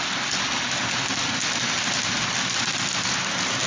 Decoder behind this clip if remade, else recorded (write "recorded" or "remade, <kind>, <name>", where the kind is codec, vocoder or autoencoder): recorded